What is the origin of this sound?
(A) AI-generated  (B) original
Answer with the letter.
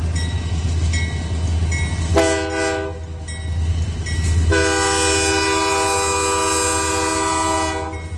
B